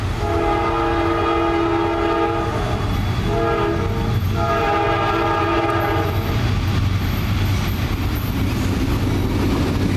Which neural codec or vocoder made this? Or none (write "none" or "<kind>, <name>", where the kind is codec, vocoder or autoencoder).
none